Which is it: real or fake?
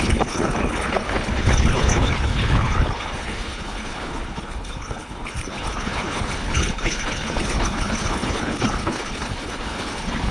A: fake